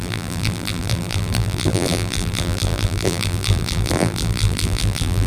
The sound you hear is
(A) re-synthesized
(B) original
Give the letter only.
A